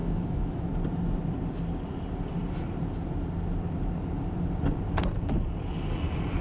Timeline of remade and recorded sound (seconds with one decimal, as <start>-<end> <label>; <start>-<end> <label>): 0.0-0.7 remade; 0.7-6.4 recorded